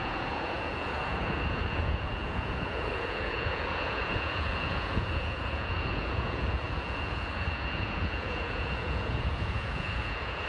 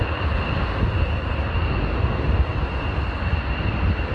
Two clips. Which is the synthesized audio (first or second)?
first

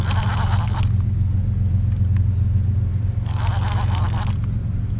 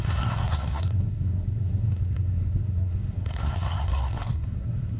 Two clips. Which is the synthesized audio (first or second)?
second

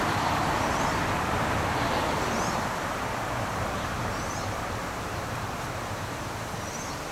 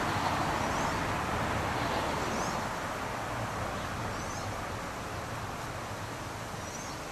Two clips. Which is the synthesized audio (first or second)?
first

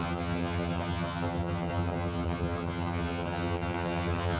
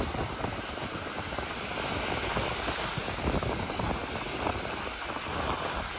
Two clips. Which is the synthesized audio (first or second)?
first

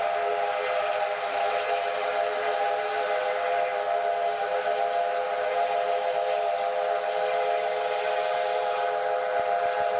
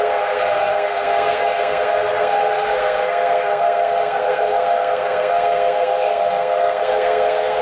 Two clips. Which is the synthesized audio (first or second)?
second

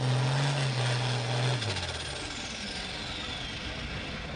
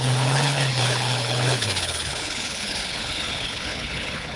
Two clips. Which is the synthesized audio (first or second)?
second